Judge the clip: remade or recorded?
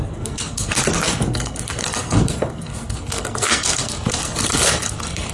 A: remade